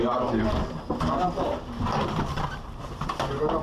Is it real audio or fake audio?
fake